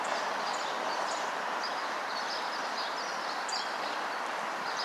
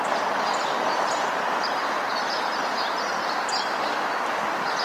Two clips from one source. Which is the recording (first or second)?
second